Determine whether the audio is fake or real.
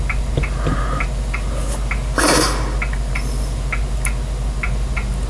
real